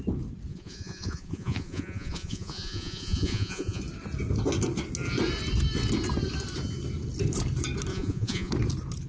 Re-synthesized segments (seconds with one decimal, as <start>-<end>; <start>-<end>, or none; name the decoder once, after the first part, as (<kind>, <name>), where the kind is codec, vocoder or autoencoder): 0.5-3.8 (vocoder, Vocos); 7.9-8.5

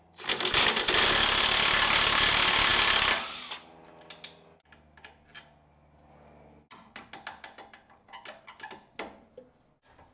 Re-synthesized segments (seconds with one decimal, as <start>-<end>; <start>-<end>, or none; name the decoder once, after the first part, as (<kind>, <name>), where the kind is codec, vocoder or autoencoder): none

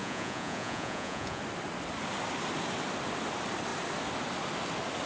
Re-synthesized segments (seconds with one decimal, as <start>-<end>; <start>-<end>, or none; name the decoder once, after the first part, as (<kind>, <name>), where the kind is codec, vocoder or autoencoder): 0.0-1.4 (vocoder, Vocos)

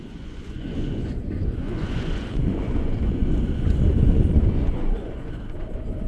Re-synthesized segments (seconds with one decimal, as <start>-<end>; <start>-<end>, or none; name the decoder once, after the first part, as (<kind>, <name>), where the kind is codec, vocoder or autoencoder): 0.0-6.1 (vocoder, Vocos)